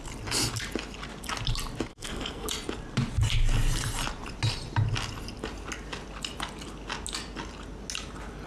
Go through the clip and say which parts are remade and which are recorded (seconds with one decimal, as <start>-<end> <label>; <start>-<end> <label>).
0.0-1.9 recorded; 1.9-2.5 remade; 2.5-8.5 recorded